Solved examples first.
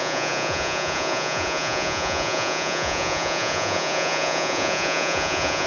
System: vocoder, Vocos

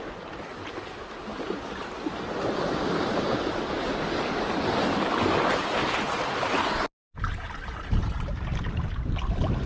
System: none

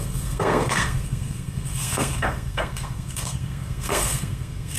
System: codec, SNAC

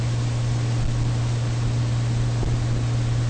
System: none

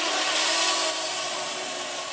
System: none